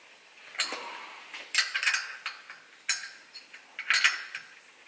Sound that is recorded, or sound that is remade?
recorded